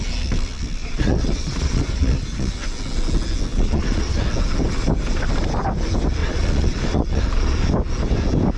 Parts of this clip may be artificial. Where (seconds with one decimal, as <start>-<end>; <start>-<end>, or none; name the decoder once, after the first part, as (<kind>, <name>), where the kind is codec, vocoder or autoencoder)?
0.8-2.5 (vocoder, Vocos); 3.5-4.2; 6.2-7.2